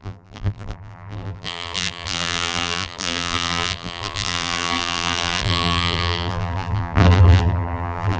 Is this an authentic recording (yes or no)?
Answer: no